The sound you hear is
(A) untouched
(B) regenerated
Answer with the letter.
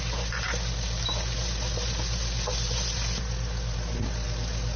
A